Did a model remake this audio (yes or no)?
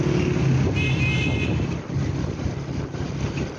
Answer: no